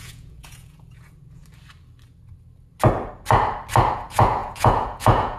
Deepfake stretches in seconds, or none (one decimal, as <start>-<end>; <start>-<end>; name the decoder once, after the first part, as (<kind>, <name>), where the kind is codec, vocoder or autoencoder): 0.0-1.4 (vocoder, Vocos); 3.9-5.4